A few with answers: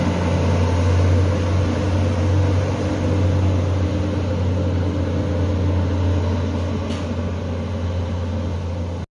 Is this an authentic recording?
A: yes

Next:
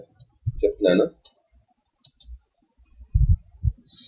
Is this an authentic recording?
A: yes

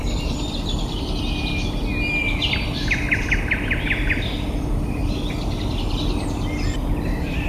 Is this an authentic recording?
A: yes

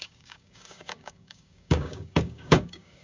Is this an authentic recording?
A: no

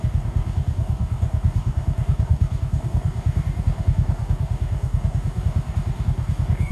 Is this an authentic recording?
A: no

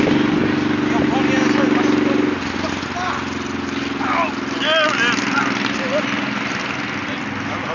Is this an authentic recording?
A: yes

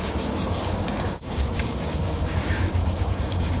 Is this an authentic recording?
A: no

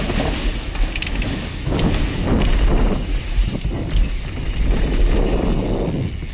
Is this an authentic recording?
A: yes